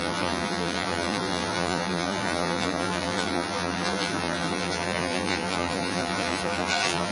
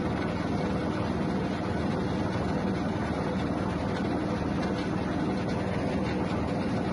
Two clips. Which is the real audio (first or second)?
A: second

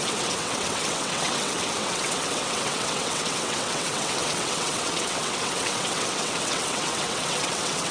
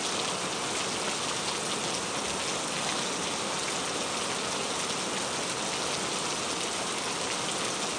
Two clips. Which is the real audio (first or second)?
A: second